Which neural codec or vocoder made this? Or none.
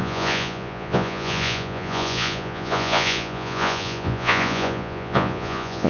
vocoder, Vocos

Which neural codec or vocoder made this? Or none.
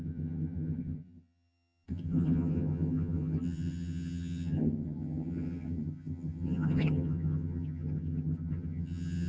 vocoder, HiFi-GAN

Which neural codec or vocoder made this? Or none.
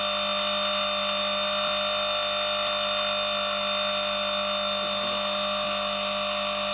none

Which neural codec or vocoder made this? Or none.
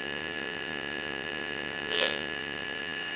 vocoder, WaveNeXt